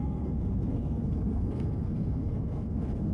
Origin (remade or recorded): remade